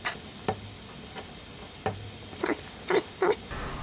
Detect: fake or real real